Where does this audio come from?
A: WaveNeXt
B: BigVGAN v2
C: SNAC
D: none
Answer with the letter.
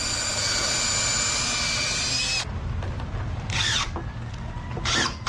D